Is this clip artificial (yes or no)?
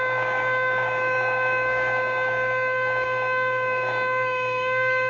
yes